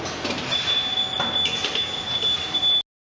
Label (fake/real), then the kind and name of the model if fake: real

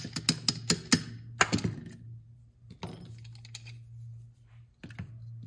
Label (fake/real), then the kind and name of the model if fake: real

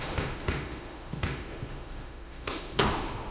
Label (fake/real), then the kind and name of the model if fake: fake, autoencoder, DAC-VAE